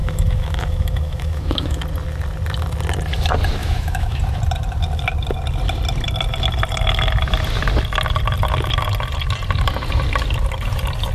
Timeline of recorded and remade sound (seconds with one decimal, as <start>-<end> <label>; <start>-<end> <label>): 0.0-1.8 remade; 1.8-3.6 recorded; 3.6-4.2 remade; 4.2-11.1 recorded